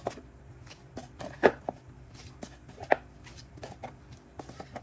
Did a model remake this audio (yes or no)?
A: yes